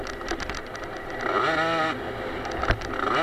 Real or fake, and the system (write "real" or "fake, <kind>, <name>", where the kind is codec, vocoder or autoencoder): real